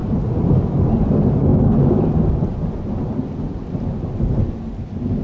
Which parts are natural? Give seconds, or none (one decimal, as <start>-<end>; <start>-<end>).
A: 0.9-5.2